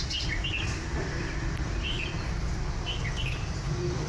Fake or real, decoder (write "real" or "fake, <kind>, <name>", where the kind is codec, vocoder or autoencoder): fake, vocoder, BigVGAN v2